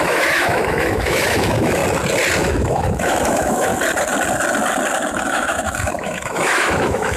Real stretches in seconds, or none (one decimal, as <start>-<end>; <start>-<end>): 1.8-2.5; 3.7-5.1